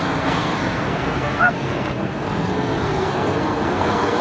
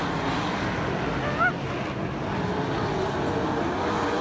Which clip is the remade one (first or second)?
first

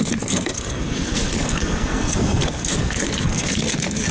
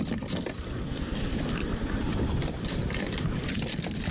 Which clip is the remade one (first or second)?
first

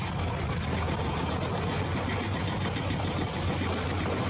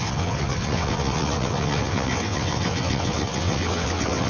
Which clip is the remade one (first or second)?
second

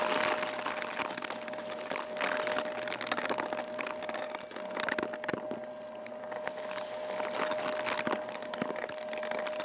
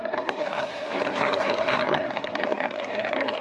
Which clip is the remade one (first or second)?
second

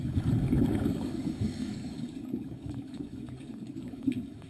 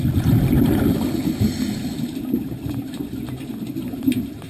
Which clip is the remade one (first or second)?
first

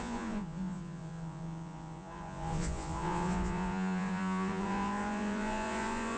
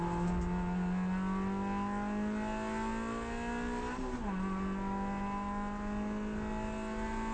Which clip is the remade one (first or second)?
first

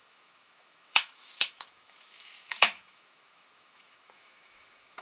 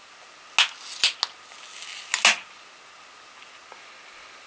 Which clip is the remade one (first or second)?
first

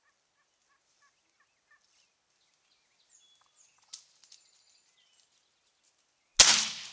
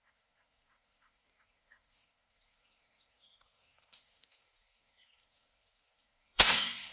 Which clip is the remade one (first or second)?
second